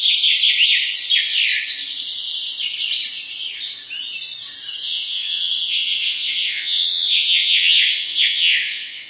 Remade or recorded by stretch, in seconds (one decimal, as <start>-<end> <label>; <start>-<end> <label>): 0.0-4.8 recorded; 4.8-9.1 remade